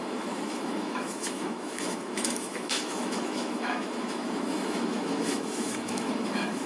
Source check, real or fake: fake